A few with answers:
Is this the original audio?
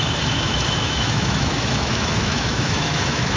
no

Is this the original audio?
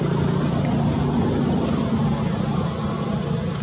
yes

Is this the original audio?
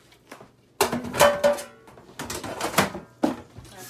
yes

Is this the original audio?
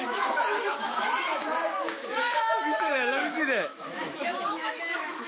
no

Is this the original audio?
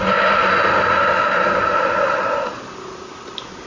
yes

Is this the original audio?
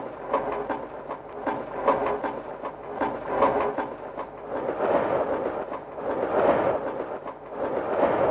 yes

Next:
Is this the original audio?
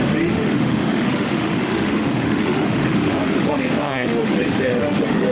no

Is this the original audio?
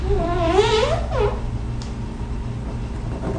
yes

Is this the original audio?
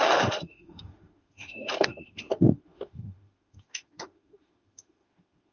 no